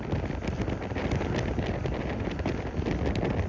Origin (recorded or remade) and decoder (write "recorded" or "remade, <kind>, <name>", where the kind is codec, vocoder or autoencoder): recorded